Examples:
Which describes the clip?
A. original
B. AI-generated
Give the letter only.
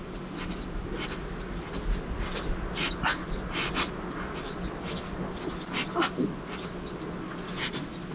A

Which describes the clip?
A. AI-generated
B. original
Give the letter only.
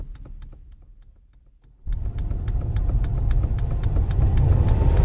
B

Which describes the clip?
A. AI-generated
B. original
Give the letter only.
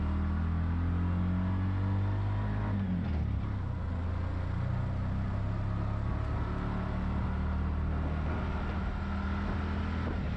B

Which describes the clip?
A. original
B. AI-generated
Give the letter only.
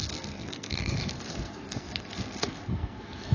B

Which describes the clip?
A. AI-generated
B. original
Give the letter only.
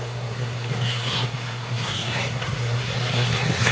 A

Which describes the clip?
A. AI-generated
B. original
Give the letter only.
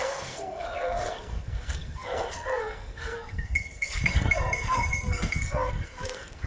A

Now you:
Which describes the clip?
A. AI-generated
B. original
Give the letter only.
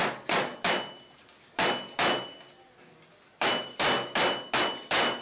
B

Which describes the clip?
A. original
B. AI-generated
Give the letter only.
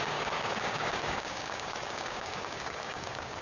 B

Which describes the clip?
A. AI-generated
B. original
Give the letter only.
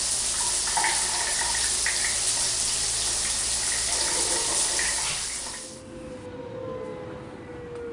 B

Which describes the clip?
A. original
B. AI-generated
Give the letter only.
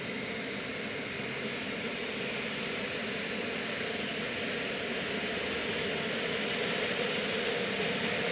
A